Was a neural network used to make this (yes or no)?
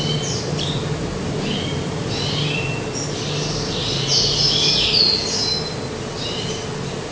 no